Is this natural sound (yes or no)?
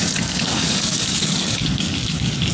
no